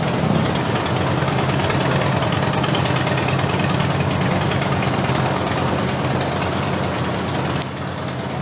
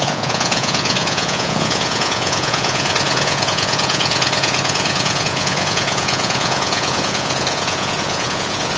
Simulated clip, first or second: second